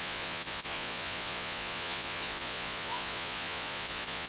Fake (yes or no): yes